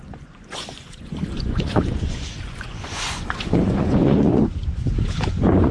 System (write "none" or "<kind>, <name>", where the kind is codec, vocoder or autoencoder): vocoder, Vocos